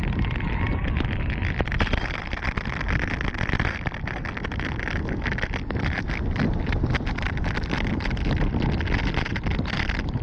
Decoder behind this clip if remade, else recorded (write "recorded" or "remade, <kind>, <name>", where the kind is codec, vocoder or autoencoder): recorded